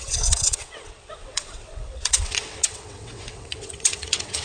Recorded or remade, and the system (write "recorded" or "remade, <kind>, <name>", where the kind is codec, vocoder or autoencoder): remade, vocoder, WaveNeXt